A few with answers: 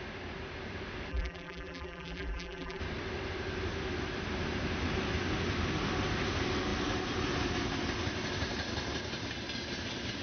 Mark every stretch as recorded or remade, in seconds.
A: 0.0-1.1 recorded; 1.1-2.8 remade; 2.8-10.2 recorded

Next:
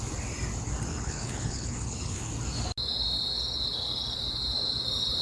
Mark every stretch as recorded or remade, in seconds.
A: 0.0-0.9 recorded; 0.9-2.3 remade; 2.3-5.2 recorded

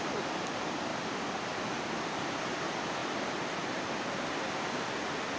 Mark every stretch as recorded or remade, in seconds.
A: 0.0-5.4 recorded

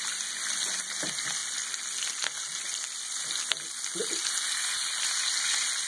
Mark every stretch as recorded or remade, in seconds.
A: 0.0-5.9 recorded

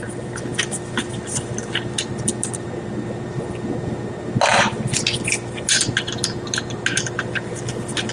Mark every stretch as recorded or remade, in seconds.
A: 0.0-8.1 recorded

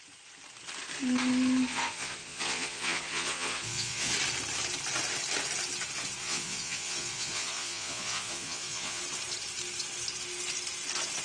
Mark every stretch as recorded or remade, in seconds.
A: 0.0-1.7 recorded; 1.7-4.1 remade; 4.1-6.2 recorded; 6.2-9.0 remade; 9.0-11.2 recorded